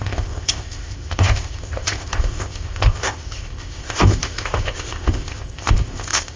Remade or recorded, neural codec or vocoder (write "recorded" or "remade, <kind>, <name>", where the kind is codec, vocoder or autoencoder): remade, codec, ZipCodec